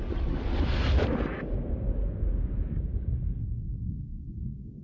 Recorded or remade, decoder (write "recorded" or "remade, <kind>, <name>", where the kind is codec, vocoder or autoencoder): recorded